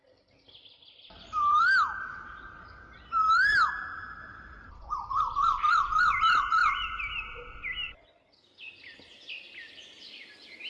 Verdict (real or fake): fake